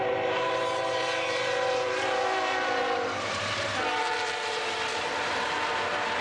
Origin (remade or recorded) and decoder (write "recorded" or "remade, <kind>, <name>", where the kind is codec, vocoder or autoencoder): remade, vocoder, BigVGAN v2